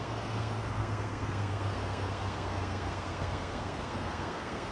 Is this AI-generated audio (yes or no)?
yes